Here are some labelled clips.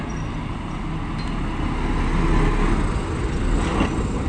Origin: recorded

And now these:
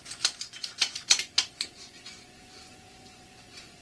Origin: remade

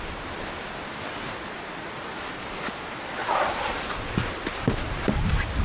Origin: remade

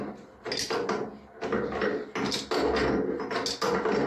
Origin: recorded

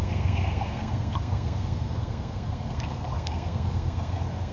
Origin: remade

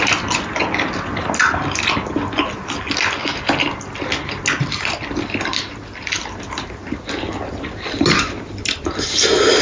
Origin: recorded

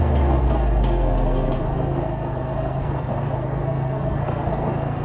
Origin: remade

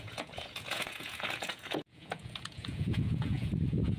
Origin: remade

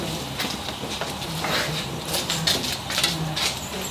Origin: recorded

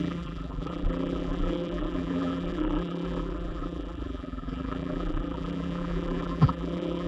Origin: remade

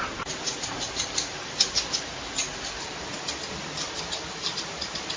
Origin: recorded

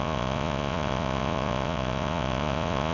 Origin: remade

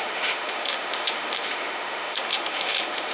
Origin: remade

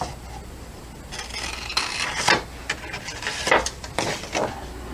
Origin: recorded